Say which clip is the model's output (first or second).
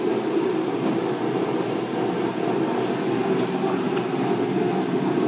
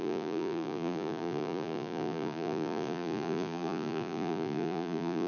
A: second